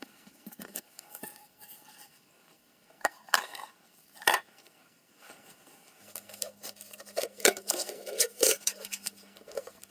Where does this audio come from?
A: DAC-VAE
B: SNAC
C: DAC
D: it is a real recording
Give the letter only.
B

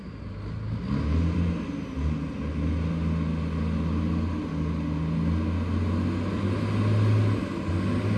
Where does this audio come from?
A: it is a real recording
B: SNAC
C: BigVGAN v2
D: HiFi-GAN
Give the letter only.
A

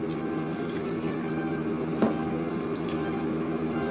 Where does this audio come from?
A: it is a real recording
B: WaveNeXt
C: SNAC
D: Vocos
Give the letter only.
A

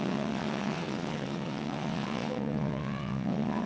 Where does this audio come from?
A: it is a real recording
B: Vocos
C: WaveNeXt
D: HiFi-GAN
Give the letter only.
C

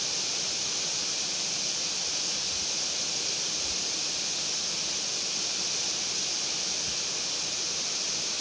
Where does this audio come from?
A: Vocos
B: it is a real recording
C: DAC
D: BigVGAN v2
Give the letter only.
B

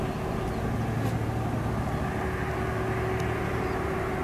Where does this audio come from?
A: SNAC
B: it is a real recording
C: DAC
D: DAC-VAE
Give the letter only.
B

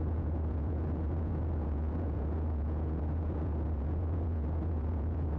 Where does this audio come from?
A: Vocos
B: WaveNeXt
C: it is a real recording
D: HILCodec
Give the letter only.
A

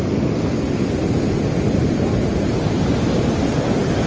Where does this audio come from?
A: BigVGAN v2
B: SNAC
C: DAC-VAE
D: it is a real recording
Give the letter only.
D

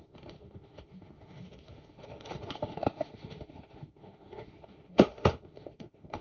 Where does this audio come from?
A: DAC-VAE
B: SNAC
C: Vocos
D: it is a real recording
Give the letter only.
A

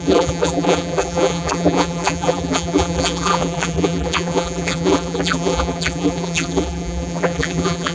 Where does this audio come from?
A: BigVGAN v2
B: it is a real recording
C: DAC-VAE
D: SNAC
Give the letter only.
A